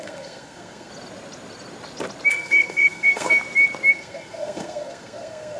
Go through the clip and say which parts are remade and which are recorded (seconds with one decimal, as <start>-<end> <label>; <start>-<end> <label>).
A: 0.0-0.9 remade; 0.9-2.3 recorded; 2.3-3.4 remade; 3.4-3.9 recorded; 3.9-5.6 remade